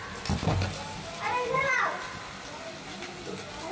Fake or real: real